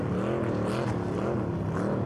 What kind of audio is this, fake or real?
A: real